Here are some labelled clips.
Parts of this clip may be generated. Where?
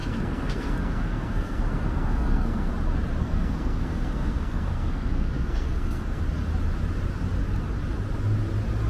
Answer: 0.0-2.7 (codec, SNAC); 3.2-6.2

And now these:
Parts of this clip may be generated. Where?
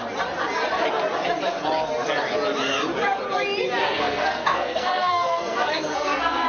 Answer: 3.8-6.5 (codec, SNAC)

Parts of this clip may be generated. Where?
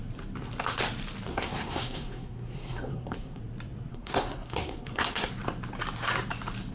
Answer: 1.3-3.4 (codec, SNAC); 3.9-5.3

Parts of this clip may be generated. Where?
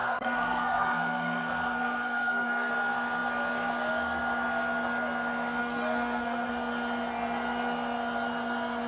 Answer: 0.0-2.7 (codec, SNAC); 5.6-6.5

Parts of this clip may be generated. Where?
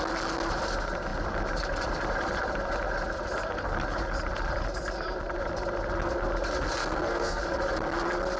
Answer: 6.8-7.4 (codec, SNAC)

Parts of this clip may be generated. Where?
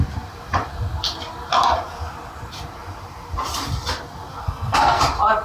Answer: 4.4-5.0 (codec, SNAC)